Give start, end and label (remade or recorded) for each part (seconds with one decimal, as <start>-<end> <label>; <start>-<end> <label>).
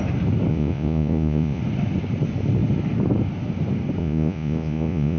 0.0-0.5 recorded; 0.5-1.6 remade; 1.6-4.0 recorded; 4.0-5.2 remade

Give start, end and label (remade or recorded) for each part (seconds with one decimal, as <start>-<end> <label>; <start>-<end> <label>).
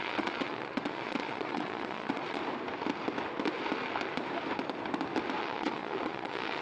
0.0-2.4 remade; 2.4-5.4 recorded; 5.4-6.6 remade